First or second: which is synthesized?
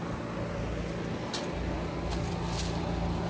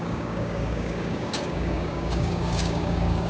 second